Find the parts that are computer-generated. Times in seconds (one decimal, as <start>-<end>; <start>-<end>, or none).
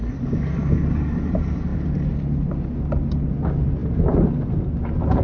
none